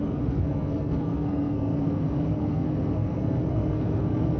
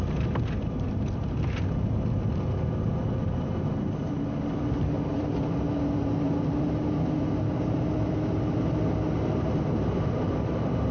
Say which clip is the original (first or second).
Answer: second